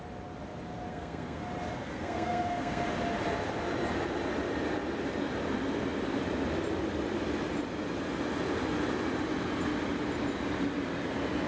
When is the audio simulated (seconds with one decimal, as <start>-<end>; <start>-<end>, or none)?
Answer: 0.9-1.4; 1.8-2.8